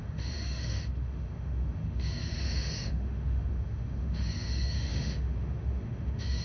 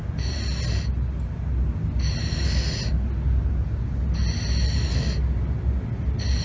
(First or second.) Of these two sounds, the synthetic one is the first